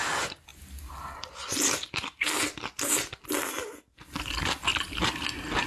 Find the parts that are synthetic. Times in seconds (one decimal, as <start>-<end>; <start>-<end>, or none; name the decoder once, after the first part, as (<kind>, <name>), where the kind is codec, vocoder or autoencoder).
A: none